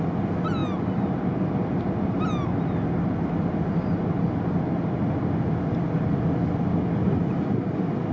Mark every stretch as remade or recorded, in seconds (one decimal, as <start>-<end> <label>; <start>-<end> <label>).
0.0-8.1 recorded